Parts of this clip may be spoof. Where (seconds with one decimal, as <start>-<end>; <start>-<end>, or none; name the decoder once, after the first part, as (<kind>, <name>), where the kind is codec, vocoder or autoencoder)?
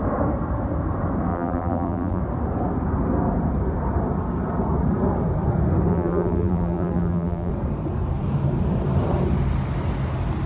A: 1.3-2.2 (vocoder, BigVGAN v2); 5.9-7.5